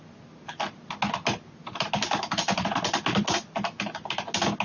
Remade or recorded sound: recorded